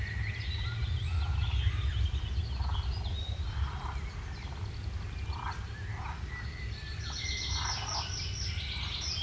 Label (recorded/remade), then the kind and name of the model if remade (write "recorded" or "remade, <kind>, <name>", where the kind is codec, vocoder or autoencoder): recorded